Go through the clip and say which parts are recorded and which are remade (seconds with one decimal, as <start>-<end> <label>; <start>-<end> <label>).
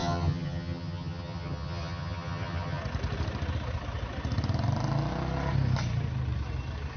0.0-2.8 remade; 2.8-7.0 recorded